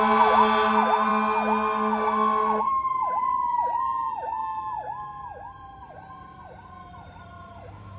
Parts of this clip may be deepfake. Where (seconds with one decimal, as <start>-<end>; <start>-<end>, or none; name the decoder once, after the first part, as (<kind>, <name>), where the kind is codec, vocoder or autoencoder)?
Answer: 0.0-1.1 (vocoder, BigVGAN v2); 2.6-4.4; 5.2-8.0